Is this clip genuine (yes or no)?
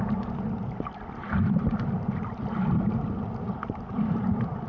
yes